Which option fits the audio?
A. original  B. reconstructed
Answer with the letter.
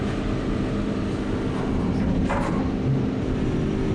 A